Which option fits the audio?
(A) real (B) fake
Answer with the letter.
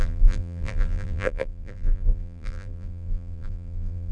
B